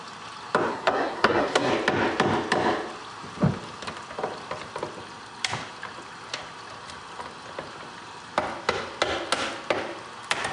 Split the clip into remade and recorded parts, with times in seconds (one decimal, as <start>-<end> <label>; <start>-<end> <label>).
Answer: 0.0-0.7 recorded; 0.7-1.7 remade; 1.7-10.5 recorded